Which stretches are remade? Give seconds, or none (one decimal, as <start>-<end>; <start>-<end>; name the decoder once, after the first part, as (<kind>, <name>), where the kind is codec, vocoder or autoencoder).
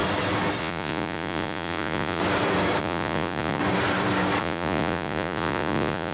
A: 0.6-2.2 (vocoder, Vocos); 2.8-3.6; 4.4-6.1